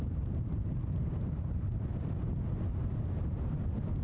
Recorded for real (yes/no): yes